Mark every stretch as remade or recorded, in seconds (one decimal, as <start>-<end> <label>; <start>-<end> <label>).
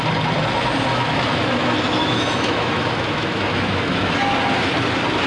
0.0-0.9 recorded; 0.9-4.1 remade; 4.1-5.3 recorded